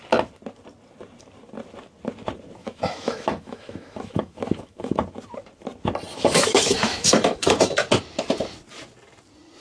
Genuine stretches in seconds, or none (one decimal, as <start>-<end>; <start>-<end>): 0.0-2.6; 5.0-6.1; 7.6-9.6